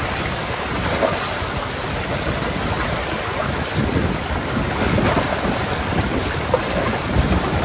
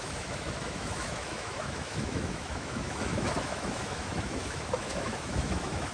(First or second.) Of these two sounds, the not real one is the second